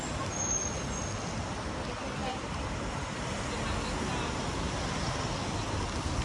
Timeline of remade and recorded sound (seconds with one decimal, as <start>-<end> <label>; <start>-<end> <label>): 0.0-2.2 recorded; 2.2-3.5 remade; 3.5-6.2 recorded